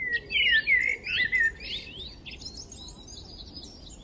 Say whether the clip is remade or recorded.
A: recorded